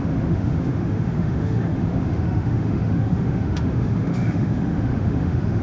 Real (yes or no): no